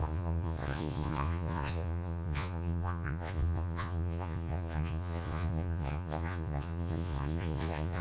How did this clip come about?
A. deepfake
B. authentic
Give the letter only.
A